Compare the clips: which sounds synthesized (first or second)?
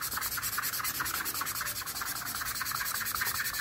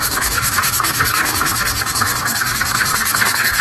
second